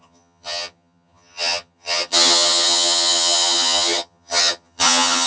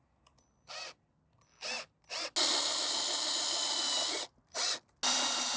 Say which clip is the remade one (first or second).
first